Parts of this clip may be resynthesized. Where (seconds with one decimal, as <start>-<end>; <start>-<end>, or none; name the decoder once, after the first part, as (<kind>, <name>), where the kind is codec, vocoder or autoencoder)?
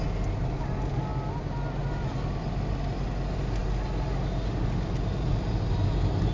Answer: none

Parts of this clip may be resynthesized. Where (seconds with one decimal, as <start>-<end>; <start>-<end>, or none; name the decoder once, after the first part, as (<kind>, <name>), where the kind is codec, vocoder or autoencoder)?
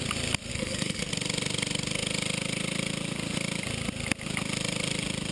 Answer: 0.5-1.1 (codec, SNAC)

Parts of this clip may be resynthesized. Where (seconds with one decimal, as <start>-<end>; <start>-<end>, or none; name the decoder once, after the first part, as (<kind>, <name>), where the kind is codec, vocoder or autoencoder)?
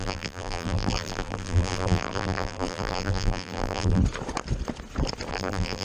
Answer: 0.0-4.0 (vocoder, BigVGAN v2); 5.3-5.8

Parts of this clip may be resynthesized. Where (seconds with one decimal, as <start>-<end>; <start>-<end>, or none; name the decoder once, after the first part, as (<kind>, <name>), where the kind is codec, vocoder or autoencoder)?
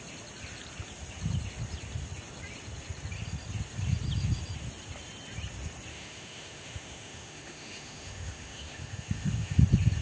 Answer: 5.9-9.6 (autoencoder, DAC-VAE)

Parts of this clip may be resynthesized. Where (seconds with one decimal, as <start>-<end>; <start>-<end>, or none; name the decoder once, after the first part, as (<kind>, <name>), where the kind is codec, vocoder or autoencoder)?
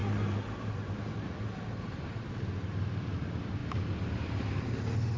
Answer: none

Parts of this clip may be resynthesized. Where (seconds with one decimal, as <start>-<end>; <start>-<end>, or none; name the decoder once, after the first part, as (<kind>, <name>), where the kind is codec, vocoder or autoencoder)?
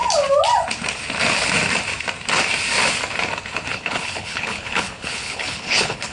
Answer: 3.7-6.1 (codec, HILCodec)